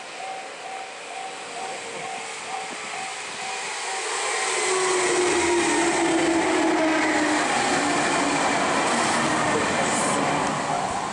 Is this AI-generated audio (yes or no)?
no